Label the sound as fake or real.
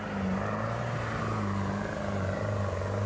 real